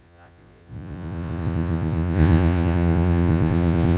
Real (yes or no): no